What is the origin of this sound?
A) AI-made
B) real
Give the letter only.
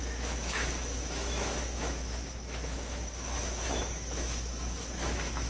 A